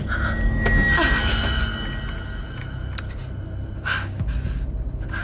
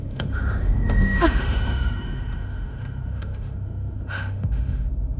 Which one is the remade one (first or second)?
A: second